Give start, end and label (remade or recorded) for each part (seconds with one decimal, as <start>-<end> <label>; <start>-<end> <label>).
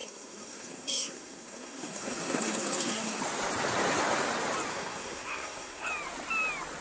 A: 0.0-3.2 remade; 3.2-4.7 recorded; 4.7-5.9 remade; 5.9-6.8 recorded